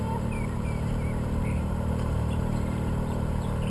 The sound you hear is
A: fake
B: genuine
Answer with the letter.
A